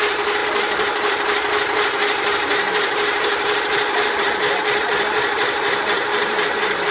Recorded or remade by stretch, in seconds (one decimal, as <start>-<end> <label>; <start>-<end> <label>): 0.0-6.9 remade